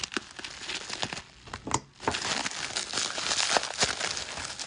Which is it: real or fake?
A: real